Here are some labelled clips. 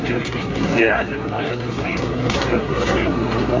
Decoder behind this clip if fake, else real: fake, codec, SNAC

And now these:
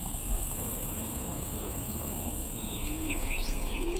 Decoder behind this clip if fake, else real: fake, codec, SNAC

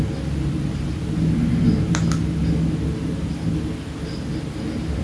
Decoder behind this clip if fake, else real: real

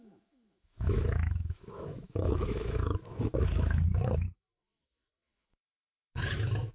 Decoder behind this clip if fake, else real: fake, autoencoder, DAC-VAE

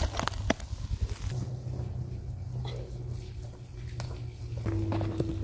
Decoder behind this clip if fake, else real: real